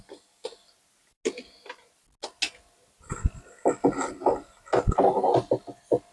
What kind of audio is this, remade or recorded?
recorded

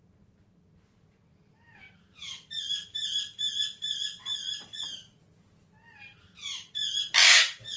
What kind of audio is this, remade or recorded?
recorded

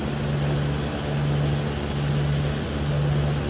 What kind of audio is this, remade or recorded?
recorded